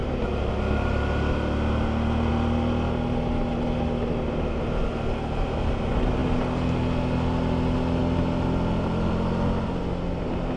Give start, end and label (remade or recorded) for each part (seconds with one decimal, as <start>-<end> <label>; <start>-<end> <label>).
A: 0.0-10.6 recorded